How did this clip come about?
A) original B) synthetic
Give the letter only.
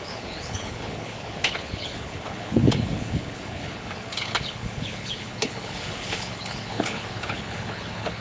B